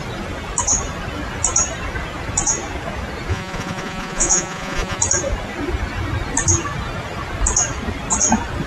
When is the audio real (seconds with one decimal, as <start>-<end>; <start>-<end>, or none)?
0.0-3.3; 5.0-8.7